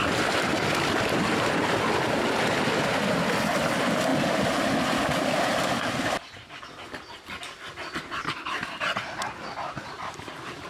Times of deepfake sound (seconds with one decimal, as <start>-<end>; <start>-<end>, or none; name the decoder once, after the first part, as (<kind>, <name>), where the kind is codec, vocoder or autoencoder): none